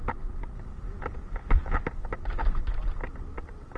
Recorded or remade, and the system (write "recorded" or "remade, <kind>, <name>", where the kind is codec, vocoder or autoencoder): recorded